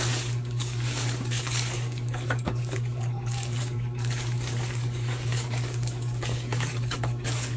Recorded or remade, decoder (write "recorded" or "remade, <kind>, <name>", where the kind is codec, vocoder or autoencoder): remade, codec, DAC